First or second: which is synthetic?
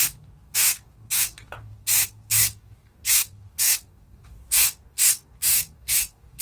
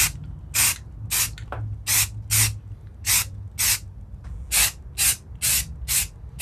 first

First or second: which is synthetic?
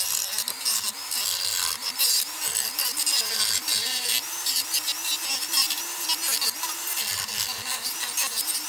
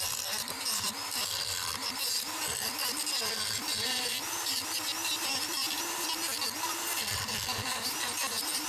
second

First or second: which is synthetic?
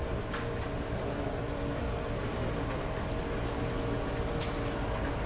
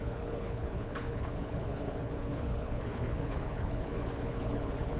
second